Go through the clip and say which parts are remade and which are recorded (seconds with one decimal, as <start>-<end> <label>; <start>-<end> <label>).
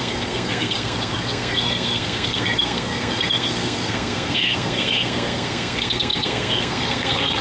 0.0-7.4 remade